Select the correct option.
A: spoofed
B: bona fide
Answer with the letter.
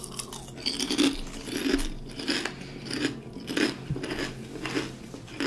B